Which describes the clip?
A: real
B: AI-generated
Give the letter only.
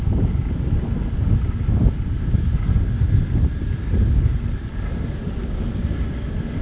A